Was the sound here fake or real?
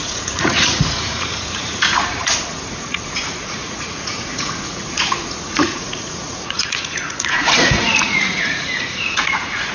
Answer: fake